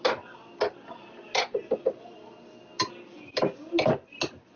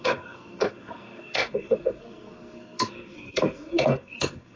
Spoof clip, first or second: second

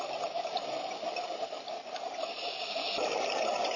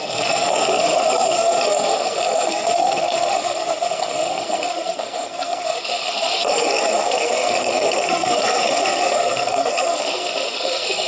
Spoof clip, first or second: second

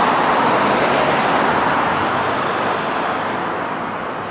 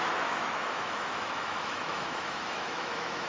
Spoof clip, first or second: second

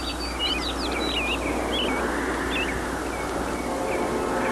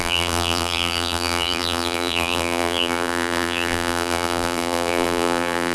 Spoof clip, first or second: second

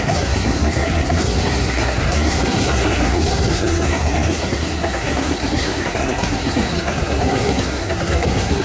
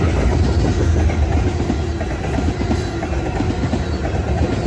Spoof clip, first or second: first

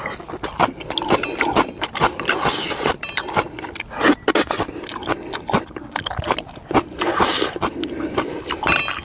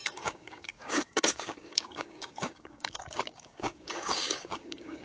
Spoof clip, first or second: second